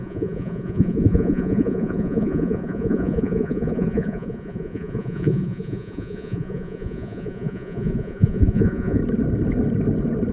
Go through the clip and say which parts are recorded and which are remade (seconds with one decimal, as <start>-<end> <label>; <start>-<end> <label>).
0.0-9.0 remade; 9.0-10.3 recorded